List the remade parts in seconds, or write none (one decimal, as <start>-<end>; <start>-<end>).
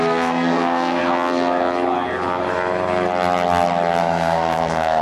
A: 0.0-1.0; 4.0-5.0